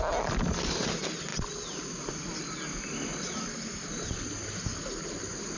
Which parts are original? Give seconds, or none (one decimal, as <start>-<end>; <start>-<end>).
0.0-5.6